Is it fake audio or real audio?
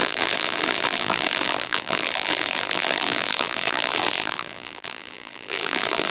fake